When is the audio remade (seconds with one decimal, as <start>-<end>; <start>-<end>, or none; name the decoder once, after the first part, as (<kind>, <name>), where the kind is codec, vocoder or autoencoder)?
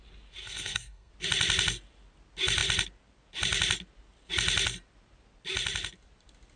0.4-1.1 (codec, SNAC)